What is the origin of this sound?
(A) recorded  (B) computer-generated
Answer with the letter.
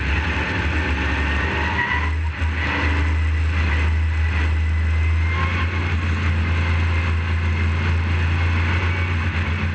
A